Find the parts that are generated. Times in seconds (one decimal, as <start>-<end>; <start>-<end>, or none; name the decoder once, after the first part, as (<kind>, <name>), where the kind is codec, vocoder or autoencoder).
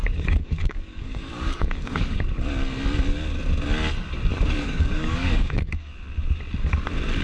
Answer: 0.0-2.2 (codec, DAC); 4.3-5.9